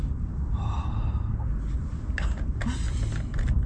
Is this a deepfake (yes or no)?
no